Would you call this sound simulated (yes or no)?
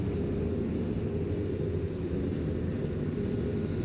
no